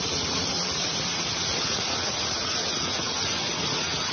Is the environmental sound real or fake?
fake